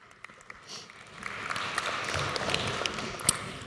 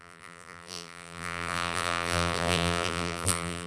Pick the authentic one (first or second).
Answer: first